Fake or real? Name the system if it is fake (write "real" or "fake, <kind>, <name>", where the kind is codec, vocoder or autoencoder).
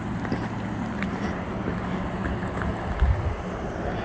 real